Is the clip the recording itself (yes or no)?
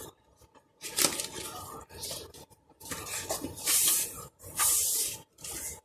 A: yes